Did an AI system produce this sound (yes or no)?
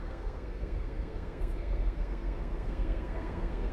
yes